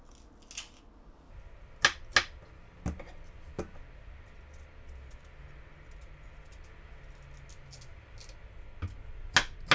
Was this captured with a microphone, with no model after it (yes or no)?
yes